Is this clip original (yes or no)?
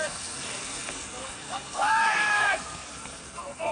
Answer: no